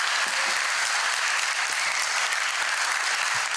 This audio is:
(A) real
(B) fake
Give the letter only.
A